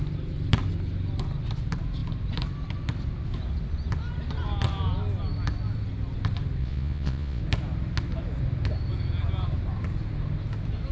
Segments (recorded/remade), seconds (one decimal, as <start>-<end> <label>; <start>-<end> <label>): 0.0-6.6 recorded; 6.6-7.4 remade; 7.4-10.9 recorded